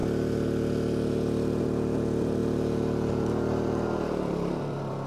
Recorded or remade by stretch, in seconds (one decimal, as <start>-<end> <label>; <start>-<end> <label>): 0.0-1.6 recorded; 1.6-2.4 remade; 2.4-3.1 recorded; 3.1-5.1 remade